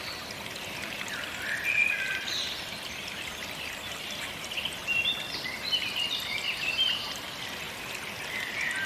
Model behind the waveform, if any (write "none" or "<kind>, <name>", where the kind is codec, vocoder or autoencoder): none